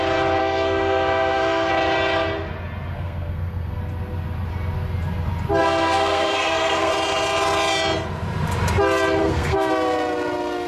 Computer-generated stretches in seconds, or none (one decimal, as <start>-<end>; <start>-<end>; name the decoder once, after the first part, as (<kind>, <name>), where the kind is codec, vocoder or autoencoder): 0.4-1.7 (codec, SNAC); 2.9-3.8; 5.6-6.9; 9.2-9.7